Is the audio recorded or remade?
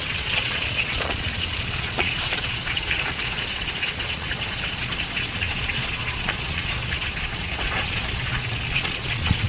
remade